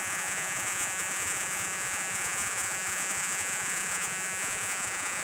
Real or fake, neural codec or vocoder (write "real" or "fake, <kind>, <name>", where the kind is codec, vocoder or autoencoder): fake, vocoder, Vocos